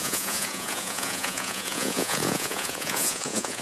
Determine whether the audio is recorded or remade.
remade